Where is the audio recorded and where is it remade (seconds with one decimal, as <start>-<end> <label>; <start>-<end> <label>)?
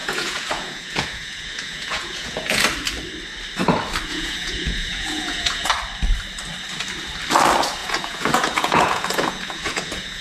0.0-2.6 remade; 2.6-4.1 recorded; 4.1-5.7 remade; 5.7-7.8 recorded; 7.8-10.2 remade